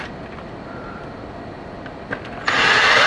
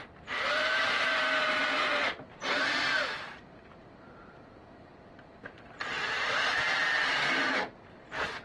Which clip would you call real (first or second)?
first